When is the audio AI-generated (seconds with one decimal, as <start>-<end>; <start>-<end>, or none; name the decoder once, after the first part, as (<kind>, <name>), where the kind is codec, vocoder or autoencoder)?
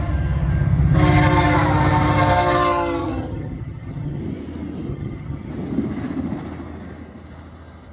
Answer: 3.0-4.2 (vocoder, HiFi-GAN); 4.9-5.5